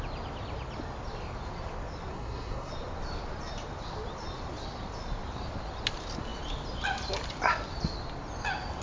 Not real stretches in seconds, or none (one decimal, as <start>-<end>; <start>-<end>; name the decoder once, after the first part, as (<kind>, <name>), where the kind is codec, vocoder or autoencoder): 2.1-2.7 (codec, SNAC)